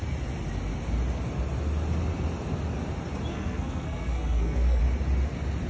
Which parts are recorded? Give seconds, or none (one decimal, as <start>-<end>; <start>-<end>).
0.0-3.3; 4.8-5.7